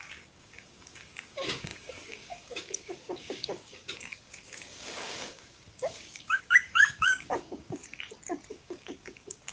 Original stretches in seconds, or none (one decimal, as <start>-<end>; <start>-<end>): 7.8-8.5